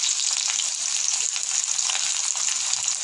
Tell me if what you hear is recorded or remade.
recorded